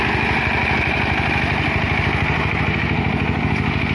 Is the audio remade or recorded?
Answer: recorded